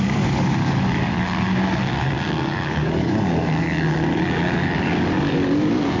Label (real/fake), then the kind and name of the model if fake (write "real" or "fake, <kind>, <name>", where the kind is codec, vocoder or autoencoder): fake, codec, DAC